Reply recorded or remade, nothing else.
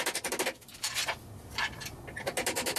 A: recorded